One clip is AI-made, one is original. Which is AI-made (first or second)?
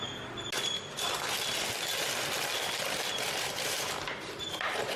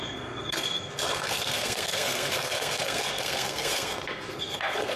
second